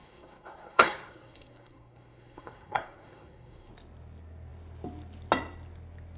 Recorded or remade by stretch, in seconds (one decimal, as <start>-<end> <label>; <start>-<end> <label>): 0.0-3.7 remade; 3.7-6.2 recorded